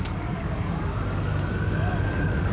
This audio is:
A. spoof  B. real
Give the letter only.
A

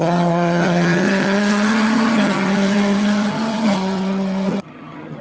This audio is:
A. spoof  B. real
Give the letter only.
A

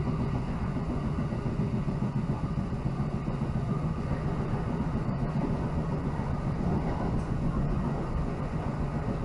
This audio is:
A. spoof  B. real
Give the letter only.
A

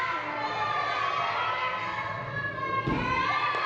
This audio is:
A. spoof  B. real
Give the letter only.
B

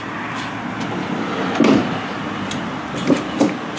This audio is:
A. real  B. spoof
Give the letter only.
A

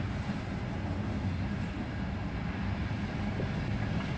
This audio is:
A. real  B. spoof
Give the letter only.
A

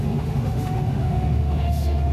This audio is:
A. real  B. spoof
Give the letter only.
B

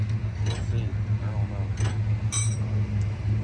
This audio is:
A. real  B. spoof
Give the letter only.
A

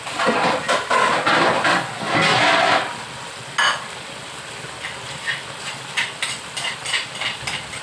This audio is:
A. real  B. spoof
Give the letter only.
A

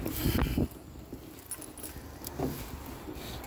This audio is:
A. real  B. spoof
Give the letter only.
A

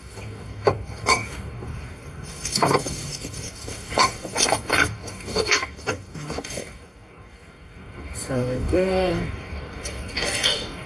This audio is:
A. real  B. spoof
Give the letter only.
B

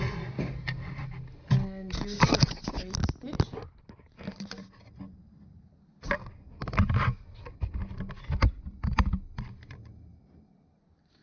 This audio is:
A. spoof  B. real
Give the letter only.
B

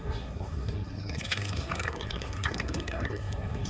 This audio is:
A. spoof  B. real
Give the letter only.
A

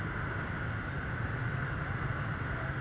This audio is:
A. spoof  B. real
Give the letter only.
B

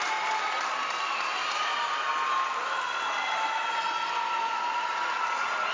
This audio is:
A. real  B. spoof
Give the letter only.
A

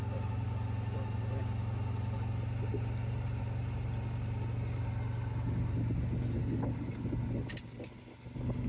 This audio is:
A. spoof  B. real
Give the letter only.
B